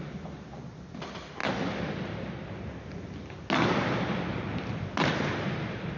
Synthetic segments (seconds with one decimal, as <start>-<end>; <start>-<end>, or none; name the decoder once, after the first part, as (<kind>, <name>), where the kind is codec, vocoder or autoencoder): none